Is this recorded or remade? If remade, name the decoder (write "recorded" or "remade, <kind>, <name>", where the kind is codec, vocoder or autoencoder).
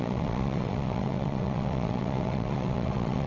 remade, vocoder, WaveNeXt